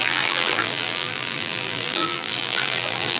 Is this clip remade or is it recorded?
remade